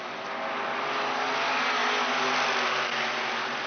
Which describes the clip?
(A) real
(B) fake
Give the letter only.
A